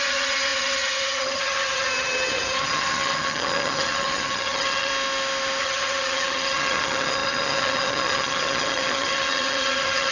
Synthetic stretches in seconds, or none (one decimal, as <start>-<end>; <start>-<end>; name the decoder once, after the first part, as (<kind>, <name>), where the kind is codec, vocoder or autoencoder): 0.0-4.9 (vocoder, HiFi-GAN); 5.6-10.1